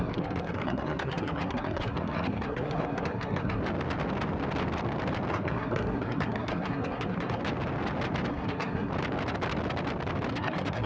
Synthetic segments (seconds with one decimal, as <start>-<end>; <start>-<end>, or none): 0.0-3.6; 5.3-7.4; 8.3-8.9; 10.3-10.9